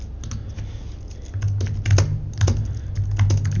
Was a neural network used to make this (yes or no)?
no